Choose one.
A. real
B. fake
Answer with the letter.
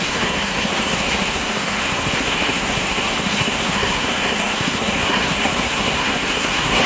B